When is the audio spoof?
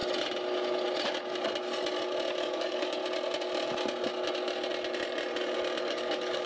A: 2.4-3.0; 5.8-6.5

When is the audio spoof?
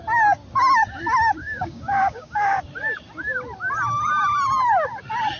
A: 1.4-2.6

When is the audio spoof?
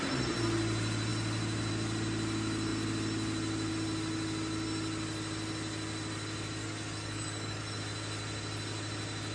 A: 6.6-7.8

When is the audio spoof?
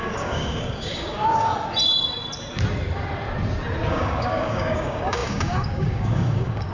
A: 0.0-1.5; 3.9-6.7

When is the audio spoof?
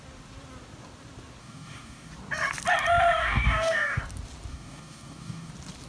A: 1.4-2.1; 3.2-4.0; 4.5-5.5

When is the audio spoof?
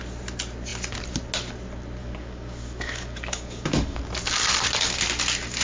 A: 2.0-4.0